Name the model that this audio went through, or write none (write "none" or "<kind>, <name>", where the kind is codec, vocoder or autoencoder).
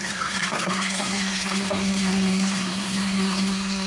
codec, SNAC